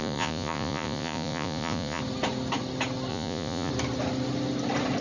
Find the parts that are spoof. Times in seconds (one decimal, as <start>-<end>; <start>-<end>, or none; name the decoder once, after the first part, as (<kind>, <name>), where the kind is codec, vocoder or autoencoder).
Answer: 0.0-2.0 (vocoder, Vocos); 3.1-3.7